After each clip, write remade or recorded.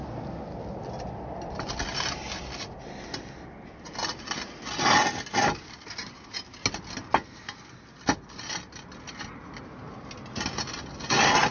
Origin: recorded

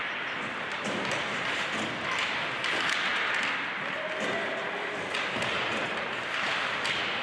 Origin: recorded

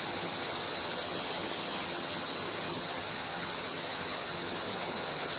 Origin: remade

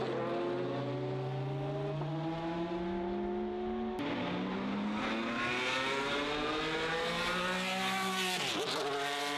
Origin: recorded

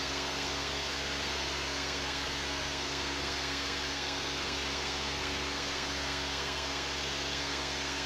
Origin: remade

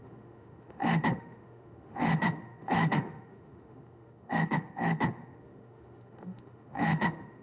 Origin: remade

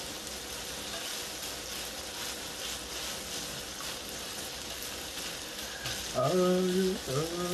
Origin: recorded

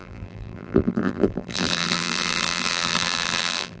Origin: remade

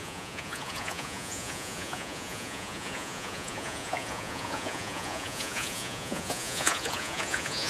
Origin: remade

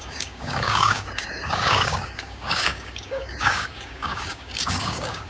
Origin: remade